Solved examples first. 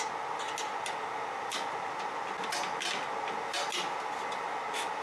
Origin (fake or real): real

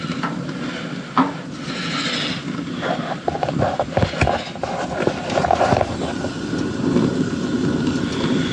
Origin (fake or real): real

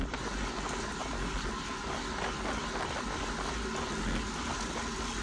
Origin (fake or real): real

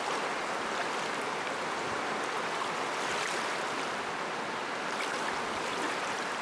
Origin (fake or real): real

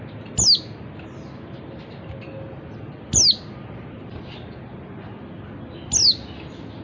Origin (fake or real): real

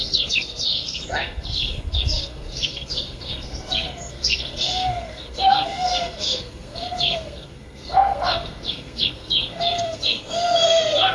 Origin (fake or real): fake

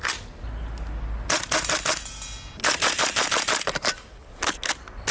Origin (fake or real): real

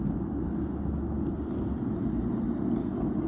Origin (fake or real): real